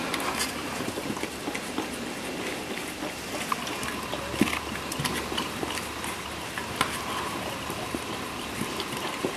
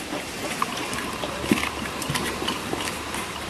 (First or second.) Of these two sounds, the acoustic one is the first